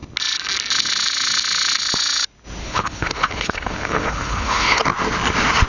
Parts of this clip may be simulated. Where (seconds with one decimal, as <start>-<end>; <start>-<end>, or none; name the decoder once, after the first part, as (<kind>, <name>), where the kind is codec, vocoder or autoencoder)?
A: 2.6-4.8 (codec, HILCodec)